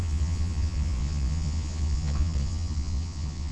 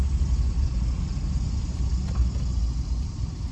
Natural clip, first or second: second